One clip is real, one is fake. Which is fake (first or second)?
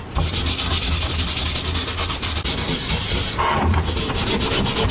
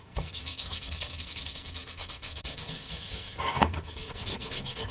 second